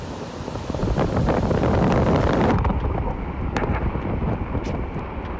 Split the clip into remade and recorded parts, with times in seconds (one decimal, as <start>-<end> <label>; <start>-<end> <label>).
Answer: 0.0-5.4 remade